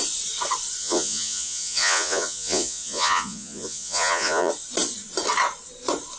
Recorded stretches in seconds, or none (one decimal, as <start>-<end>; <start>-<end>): 0.0-0.8; 4.5-6.2